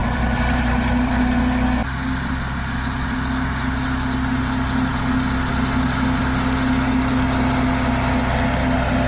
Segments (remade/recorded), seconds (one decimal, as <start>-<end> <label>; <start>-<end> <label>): 0.0-1.4 remade; 1.4-9.1 recorded